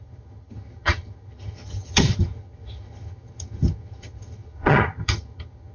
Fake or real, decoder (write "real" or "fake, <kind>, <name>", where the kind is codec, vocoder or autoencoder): fake, vocoder, HiFi-GAN